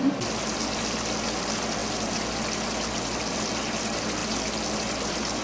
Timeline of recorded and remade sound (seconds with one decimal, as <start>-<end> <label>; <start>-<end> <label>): 0.0-5.4 recorded